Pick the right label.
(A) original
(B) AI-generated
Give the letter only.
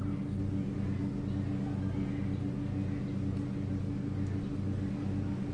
A